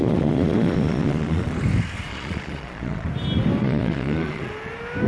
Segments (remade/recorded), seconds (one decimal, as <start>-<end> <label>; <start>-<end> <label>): 0.0-1.6 remade; 1.6-2.1 recorded; 2.1-3.1 remade; 3.1-3.6 recorded; 3.6-4.5 remade; 4.5-5.1 recorded